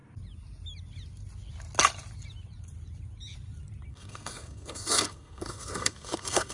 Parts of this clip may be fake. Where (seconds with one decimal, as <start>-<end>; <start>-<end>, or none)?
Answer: 3.9-6.5